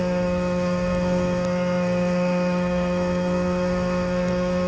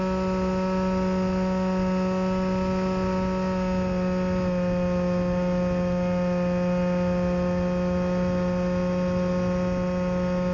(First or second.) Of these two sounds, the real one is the second